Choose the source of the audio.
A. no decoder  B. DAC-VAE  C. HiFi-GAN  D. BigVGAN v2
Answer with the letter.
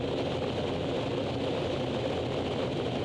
A